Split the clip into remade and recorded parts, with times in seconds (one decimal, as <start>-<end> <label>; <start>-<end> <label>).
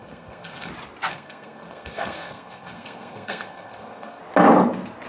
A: 0.0-0.7 remade; 0.7-1.1 recorded; 1.1-4.2 remade; 4.2-5.1 recorded